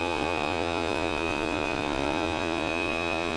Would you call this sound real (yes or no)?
no